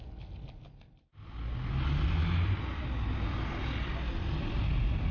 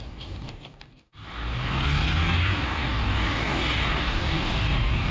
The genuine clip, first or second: first